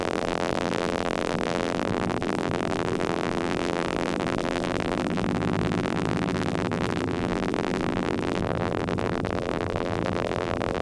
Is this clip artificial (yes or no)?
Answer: yes